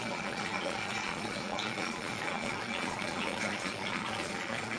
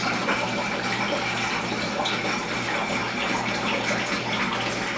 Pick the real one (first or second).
second